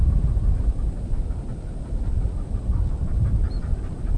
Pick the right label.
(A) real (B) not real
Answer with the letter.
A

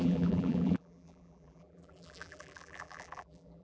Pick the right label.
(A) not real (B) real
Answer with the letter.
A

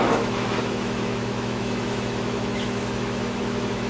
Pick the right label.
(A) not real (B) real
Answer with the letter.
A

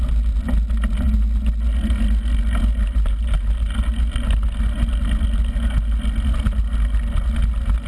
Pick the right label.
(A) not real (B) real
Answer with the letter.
B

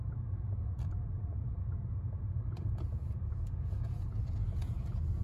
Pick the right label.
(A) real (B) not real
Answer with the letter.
B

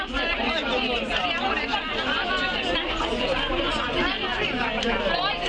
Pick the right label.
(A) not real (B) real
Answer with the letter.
B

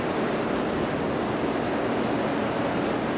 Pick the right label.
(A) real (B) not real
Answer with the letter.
A